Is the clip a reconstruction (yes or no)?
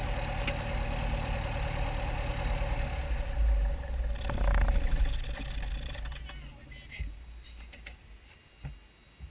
no